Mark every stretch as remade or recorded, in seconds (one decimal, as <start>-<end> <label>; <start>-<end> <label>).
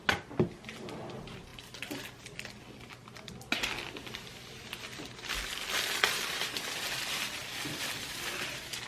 0.0-1.5 recorded; 1.5-2.1 remade; 2.1-7.4 recorded; 7.4-8.9 remade